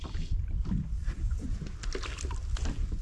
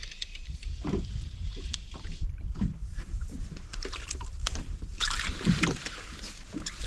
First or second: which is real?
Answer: first